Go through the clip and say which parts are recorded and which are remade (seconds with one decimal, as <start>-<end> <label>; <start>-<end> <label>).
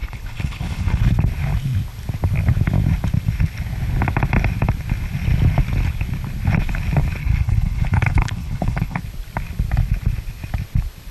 0.0-1.0 remade; 1.0-7.2 recorded; 7.2-9.0 remade; 9.0-11.1 recorded